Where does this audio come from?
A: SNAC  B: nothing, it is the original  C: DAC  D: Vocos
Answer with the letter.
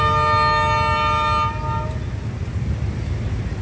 B